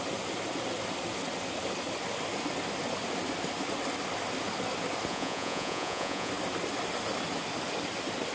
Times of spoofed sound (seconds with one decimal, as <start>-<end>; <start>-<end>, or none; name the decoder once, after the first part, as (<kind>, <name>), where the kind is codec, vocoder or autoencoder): 5.1-6.3 (vocoder, Vocos)